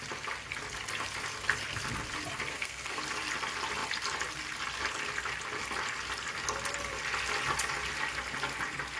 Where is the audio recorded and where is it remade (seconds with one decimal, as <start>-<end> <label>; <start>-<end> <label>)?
0.0-2.5 recorded; 2.5-3.0 remade; 3.0-9.0 recorded